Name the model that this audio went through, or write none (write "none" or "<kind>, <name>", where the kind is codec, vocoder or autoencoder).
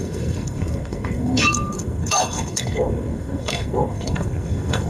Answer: codec, SNAC